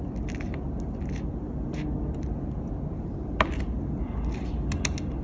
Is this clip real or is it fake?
real